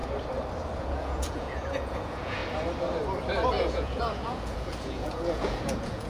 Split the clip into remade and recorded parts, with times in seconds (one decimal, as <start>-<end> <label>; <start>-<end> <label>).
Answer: 0.0-0.8 recorded; 0.8-2.4 remade; 2.4-3.5 recorded; 3.5-6.1 remade